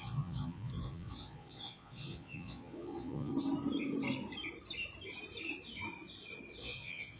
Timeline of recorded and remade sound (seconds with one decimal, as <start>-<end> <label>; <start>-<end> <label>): 0.0-3.3 remade; 3.3-6.6 recorded; 6.6-7.2 remade